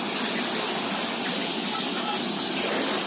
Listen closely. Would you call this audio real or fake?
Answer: real